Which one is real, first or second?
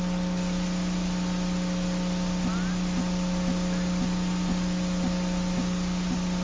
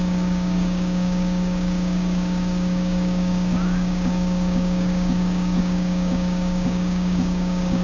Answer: first